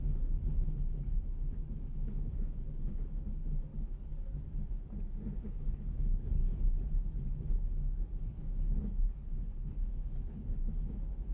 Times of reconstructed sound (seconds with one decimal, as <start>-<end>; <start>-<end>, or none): 0.0-4.1; 5.4-6.4; 7.5-11.3